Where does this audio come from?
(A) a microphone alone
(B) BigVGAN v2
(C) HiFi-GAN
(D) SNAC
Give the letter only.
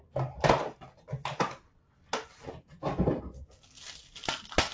A